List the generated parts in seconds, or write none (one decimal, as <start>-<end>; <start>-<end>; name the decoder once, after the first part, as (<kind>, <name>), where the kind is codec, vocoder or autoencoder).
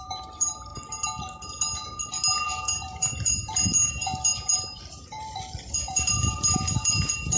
0.0-0.7 (vocoder, BigVGAN v2); 2.5-7.4